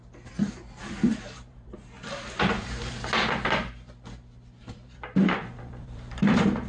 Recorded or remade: remade